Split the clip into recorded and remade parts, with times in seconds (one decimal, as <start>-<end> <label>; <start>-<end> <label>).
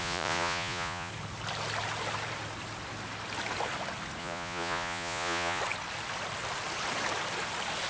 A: 0.0-1.1 remade; 1.1-4.2 recorded; 4.2-5.6 remade; 5.6-7.9 recorded